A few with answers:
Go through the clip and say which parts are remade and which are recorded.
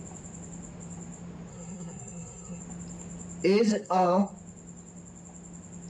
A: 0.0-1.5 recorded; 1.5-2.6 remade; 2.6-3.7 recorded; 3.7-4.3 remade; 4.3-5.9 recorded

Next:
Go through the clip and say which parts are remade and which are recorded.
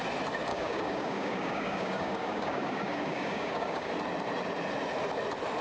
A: 0.0-0.5 recorded; 0.5-3.9 remade; 3.9-5.6 recorded